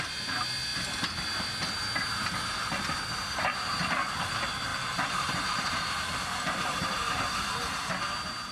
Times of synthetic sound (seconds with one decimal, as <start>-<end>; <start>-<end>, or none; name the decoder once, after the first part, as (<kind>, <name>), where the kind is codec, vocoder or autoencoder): 4.7-7.9 (vocoder, BigVGAN v2)